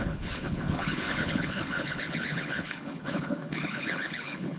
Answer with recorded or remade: remade